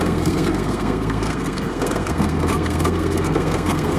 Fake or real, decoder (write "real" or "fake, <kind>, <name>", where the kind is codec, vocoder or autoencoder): fake, codec, SNAC